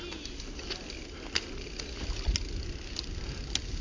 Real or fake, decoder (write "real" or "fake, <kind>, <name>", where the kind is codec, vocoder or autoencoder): real